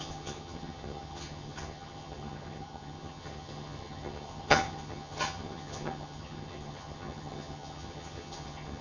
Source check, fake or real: fake